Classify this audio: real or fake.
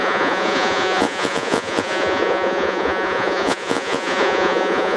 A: fake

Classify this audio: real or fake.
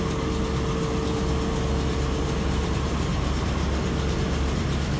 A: real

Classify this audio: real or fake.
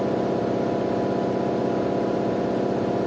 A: real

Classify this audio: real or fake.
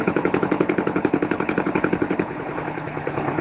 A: fake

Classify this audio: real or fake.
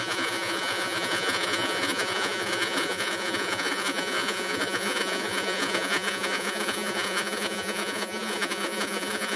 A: fake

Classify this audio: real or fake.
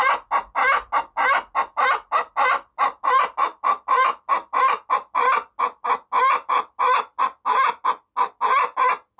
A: real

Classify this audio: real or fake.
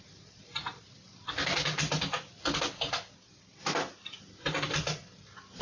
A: real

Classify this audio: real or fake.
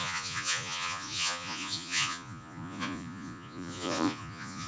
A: fake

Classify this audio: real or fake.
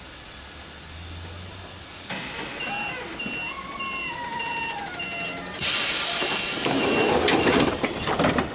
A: real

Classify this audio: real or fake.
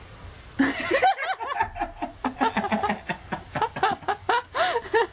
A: real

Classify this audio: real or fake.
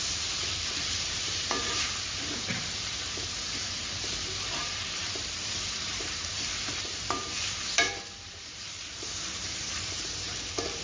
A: fake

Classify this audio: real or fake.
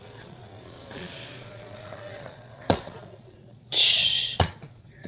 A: fake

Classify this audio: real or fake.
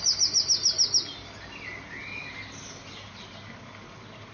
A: real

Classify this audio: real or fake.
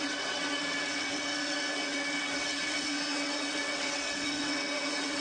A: fake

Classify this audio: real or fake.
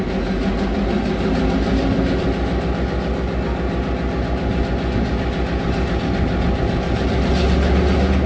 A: real